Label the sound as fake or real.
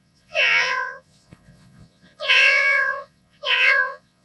fake